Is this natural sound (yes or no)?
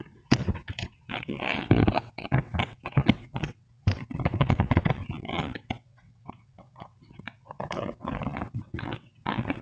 no